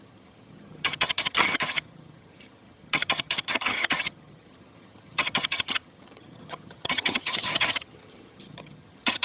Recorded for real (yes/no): no